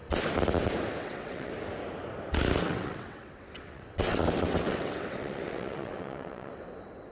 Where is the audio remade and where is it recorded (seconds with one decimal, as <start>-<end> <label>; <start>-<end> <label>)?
0.0-1.0 recorded; 1.0-1.5 remade; 1.5-2.6 recorded; 2.6-6.5 remade; 6.5-7.1 recorded